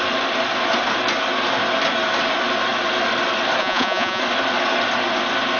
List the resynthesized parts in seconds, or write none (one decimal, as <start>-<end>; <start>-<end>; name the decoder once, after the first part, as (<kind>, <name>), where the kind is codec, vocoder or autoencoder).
3.6-4.2 (vocoder, Vocos)